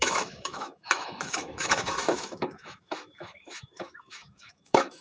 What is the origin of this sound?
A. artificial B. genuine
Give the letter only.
A